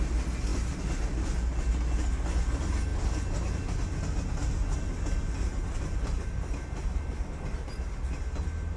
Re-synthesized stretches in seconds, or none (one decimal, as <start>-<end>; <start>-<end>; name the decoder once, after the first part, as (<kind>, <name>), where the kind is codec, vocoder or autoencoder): none